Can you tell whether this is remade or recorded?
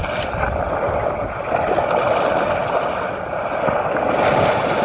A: recorded